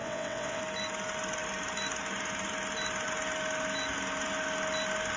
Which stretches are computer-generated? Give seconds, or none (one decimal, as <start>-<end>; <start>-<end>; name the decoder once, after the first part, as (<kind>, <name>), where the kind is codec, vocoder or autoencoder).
0.0-0.6 (vocoder, WaveNeXt)